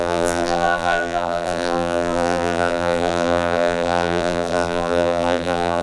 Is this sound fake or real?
fake